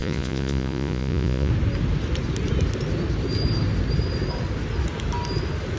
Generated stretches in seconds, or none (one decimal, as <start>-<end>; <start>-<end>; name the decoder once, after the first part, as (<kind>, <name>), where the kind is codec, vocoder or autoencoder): 0.0-1.5 (vocoder, Vocos)